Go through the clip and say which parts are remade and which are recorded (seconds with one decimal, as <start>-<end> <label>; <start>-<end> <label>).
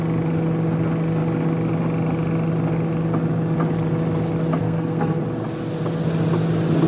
0.0-4.6 recorded; 4.6-5.2 remade; 5.2-6.9 recorded